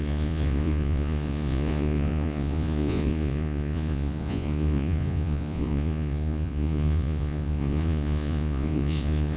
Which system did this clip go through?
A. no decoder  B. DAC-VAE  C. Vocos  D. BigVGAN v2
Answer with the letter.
C